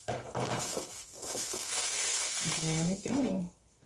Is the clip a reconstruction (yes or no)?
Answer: yes